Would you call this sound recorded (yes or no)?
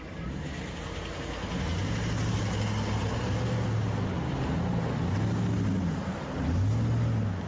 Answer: yes